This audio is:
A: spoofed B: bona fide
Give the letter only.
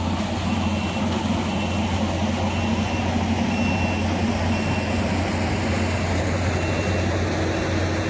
B